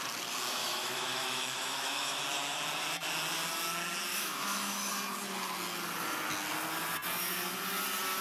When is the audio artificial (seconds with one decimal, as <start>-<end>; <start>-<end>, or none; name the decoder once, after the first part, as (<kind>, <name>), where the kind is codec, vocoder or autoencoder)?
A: 0.6-2.2 (autoencoder, DAC-VAE); 4.1-4.9